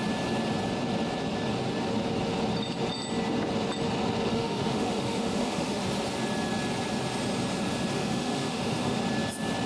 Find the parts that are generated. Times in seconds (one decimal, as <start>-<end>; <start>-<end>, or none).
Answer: 4.3-5.8; 8.0-9.0

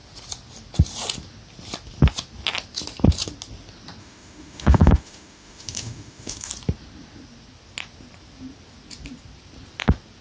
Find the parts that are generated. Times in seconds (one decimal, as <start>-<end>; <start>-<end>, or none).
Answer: 4.0-6.5